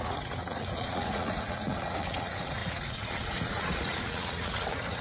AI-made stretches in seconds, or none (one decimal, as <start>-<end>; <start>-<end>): 0.0-5.0